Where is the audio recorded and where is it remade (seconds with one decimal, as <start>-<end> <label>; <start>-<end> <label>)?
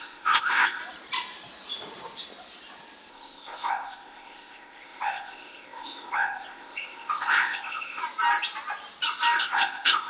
0.0-0.8 remade; 0.8-3.1 recorded; 3.1-8.0 remade; 8.0-9.4 recorded; 9.4-10.1 remade